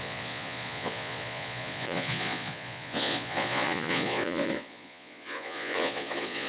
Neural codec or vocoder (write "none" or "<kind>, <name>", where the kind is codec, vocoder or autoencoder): vocoder, Vocos